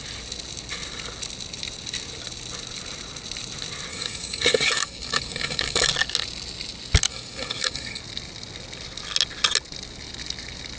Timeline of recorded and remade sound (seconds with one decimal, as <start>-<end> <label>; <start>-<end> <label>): 0.0-3.9 recorded; 3.9-5.9 remade; 5.9-7.1 recorded; 7.1-8.0 remade; 8.0-10.8 recorded